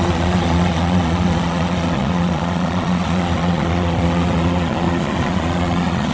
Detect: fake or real fake